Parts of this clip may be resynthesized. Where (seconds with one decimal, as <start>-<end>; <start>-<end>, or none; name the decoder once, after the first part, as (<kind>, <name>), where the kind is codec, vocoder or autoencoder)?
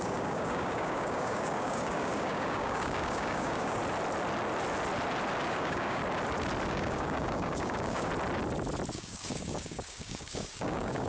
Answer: 0.0-3.8 (codec, DAC); 5.5-6.0; 6.7-8.1; 8.9-11.1